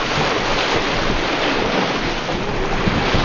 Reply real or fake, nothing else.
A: real